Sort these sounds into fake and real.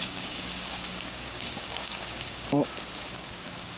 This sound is fake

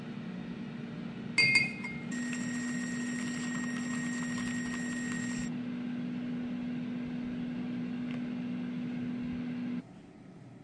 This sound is real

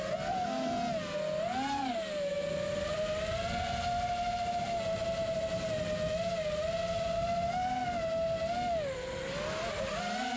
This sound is real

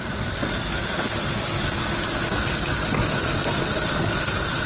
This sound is real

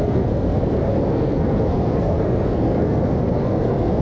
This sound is fake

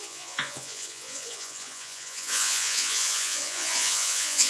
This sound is fake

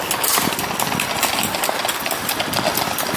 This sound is fake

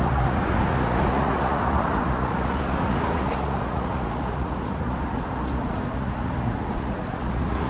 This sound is fake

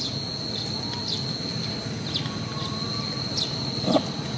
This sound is real